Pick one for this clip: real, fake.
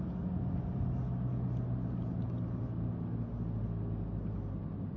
real